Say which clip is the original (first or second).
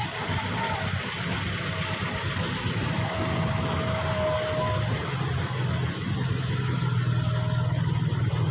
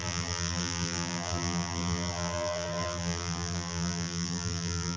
first